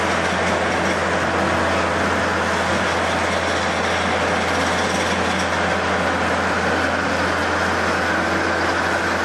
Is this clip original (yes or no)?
yes